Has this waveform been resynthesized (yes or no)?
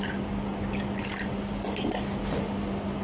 no